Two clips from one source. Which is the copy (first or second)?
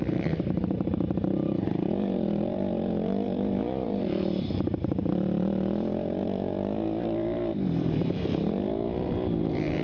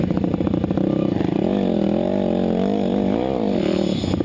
first